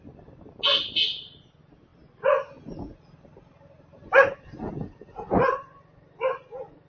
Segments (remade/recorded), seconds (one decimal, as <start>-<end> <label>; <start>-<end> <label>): 0.0-6.9 recorded